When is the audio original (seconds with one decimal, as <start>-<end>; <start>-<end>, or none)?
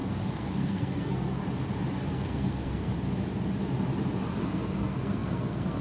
1.4-2.1; 2.9-4.4